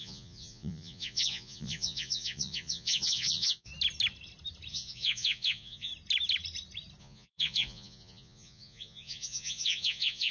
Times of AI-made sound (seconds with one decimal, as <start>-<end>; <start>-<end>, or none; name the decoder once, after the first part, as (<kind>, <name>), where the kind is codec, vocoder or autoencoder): 0.0-3.7 (vocoder, Vocos); 4.7-5.9; 7.0-10.3